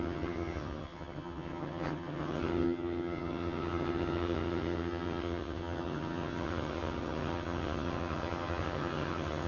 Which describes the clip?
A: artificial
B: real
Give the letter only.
A